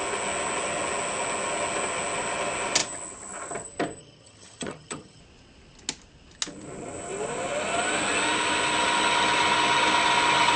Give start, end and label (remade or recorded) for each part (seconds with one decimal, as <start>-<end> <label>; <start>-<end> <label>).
0.0-4.0 recorded; 4.0-5.2 remade; 5.2-10.6 recorded